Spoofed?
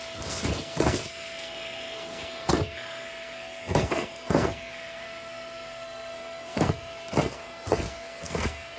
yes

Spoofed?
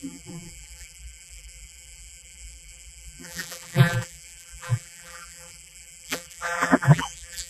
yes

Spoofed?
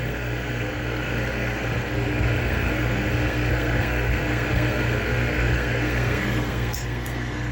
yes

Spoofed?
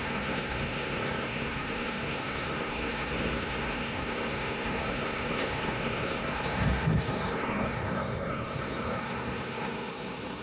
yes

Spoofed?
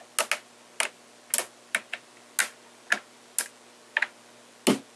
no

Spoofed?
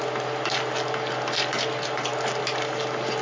no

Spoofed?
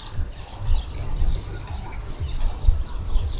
no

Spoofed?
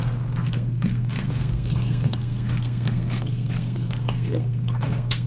yes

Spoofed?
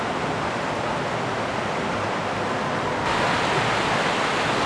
no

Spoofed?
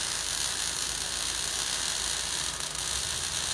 no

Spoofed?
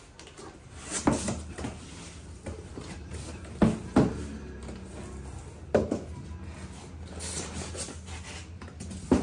no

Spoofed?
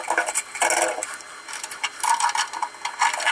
no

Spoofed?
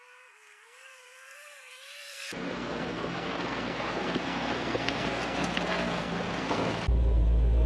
yes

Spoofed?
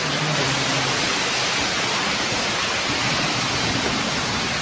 no